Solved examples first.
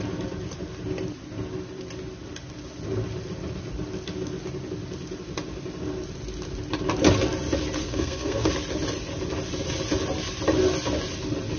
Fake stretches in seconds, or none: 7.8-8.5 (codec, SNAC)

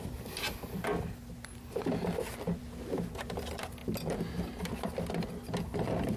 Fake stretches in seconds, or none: none

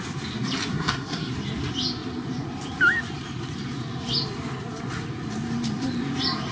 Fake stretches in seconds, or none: 0.7-1.3 (codec, SNAC)

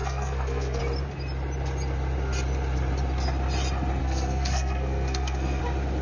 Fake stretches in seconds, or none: 0.0-0.8 (codec, SNAC); 4.0-5.6

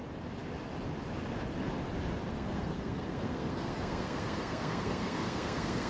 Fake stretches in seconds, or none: 2.3-5.9 (codec, SNAC)

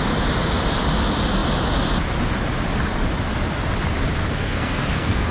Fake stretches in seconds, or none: 4.2-5.3 (codec, SNAC)

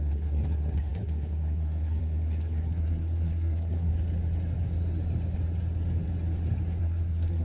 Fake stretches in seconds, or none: 0.0-3.9 (codec, SNAC); 6.8-7.4

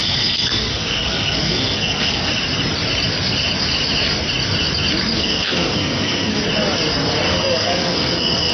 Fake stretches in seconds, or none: 0.0-2.3 (codec, SNAC); 5.2-6.4; 7.3-8.5